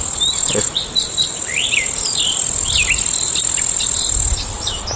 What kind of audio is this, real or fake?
real